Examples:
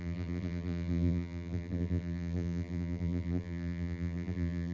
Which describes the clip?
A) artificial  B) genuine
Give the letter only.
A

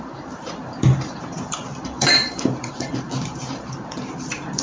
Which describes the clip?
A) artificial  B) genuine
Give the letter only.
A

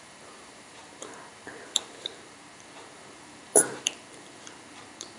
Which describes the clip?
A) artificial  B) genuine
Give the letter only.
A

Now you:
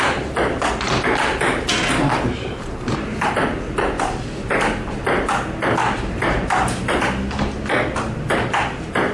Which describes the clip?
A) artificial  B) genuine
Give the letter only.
B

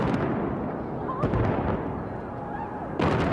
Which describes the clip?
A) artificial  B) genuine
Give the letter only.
B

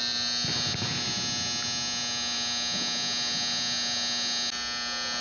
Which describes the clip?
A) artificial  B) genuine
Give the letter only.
B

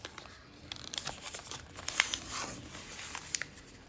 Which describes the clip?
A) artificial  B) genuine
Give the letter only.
A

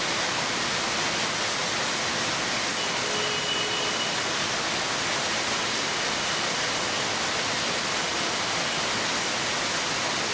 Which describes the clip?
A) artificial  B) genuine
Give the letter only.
B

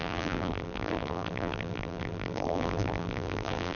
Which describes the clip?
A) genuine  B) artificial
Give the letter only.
B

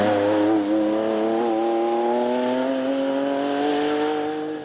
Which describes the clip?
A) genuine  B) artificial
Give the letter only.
A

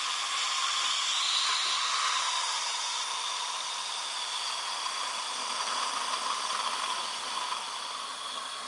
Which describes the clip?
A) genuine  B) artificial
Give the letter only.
B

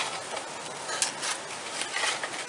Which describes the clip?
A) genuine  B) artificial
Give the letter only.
A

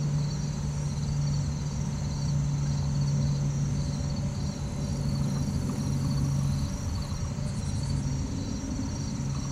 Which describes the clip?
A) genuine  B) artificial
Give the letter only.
A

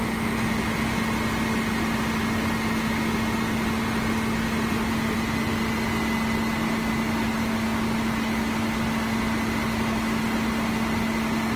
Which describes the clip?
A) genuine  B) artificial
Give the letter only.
A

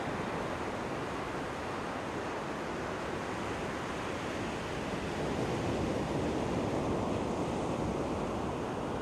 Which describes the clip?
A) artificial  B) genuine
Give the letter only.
B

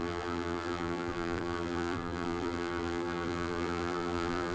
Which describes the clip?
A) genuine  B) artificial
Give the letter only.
B